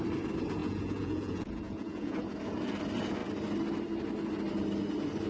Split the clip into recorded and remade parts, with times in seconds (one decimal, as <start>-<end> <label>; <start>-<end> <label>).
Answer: 0.0-0.6 recorded; 0.6-2.2 remade; 2.2-5.3 recorded